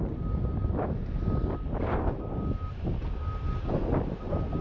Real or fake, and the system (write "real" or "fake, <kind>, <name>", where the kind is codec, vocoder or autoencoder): real